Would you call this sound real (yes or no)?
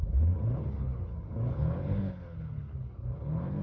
no